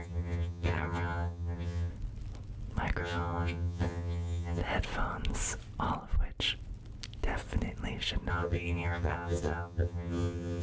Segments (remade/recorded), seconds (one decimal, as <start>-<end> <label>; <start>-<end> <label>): 0.0-1.9 remade; 1.9-3.0 recorded; 3.0-4.6 remade; 4.6-8.3 recorded; 8.3-10.6 remade